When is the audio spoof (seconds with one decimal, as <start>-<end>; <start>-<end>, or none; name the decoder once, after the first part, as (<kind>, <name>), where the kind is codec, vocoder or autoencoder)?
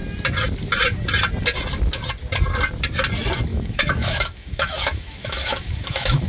3.5-6.3 (autoencoder, DAC-VAE)